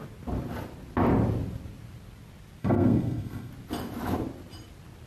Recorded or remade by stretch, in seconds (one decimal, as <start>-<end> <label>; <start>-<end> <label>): 0.0-2.6 recorded; 2.6-3.5 remade; 3.5-5.1 recorded